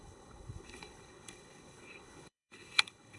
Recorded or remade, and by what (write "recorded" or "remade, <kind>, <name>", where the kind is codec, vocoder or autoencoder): remade, codec, HILCodec